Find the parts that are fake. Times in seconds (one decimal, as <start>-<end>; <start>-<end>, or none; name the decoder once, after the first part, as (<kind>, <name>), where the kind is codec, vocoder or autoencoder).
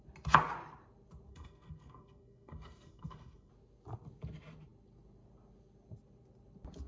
1.3-3.5 (codec, SNAC)